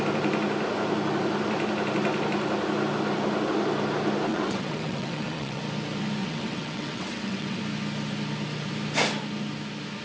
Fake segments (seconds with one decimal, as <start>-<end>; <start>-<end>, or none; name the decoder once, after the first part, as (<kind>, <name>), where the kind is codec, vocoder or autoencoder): 4.3-5.6 (vocoder, WaveNeXt); 6.2-7.6